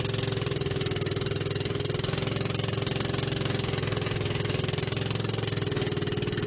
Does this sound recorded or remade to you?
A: recorded